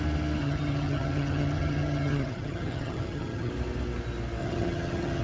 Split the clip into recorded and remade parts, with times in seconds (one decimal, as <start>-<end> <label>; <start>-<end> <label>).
0.0-0.4 recorded; 0.4-3.5 remade; 3.5-4.4 recorded; 4.4-5.2 remade